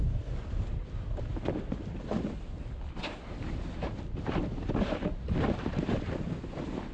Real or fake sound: real